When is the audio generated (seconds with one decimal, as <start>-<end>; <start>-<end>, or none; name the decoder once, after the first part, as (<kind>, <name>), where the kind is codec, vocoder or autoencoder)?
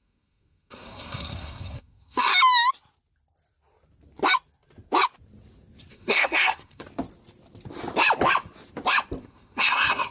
0.0-2.3 (codec, SNAC); 5.9-6.8; 9.2-10.1